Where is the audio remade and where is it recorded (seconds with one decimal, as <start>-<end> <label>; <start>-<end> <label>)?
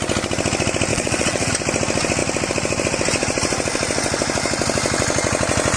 0.0-0.9 recorded; 0.9-1.5 remade; 1.5-5.8 recorded